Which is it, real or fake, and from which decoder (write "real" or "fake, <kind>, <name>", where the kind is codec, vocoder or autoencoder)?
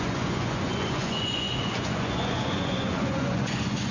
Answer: fake, vocoder, Vocos